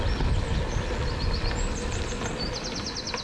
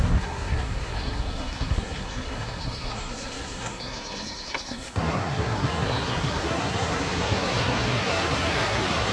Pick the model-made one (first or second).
second